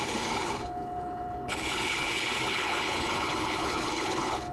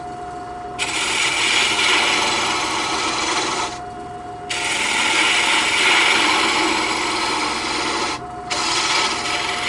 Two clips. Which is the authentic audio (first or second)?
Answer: second